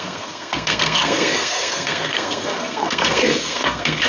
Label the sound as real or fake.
fake